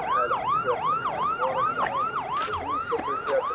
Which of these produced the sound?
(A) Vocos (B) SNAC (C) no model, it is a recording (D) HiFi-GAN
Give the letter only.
C